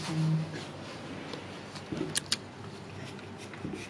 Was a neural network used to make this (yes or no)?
no